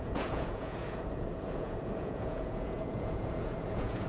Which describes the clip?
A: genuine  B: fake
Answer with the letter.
B